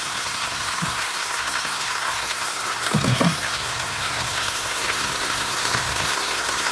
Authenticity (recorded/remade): remade